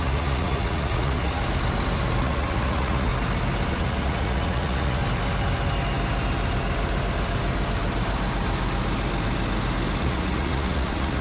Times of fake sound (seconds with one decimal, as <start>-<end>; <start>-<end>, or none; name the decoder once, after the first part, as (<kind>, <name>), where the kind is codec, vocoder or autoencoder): 0.0-1.4 (vocoder, Vocos); 2.2-3.1; 3.7-5.0; 10.0-11.2